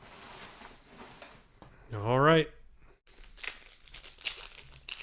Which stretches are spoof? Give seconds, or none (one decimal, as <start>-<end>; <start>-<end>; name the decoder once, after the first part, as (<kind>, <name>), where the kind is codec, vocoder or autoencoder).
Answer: none